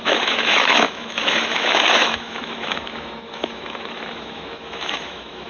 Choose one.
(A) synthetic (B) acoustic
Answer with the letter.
A